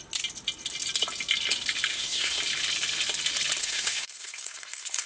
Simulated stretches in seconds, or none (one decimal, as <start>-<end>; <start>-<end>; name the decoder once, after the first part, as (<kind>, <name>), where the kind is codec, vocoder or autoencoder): 1.9-2.4 (codec, SNAC); 3.6-5.1